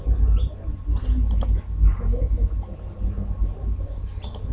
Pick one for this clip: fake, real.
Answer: real